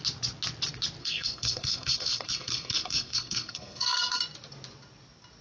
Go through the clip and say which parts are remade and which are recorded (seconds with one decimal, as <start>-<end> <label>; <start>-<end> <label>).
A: 0.0-1.0 recorded; 1.0-4.2 remade; 4.2-5.4 recorded